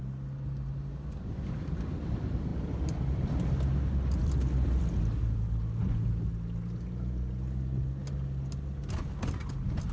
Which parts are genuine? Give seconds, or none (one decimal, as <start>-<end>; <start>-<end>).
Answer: 0.0-4.2; 4.8-9.9